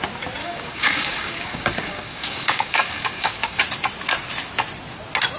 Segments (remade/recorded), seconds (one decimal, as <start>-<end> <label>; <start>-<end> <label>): 0.0-0.4 recorded; 0.4-3.6 remade; 3.6-5.4 recorded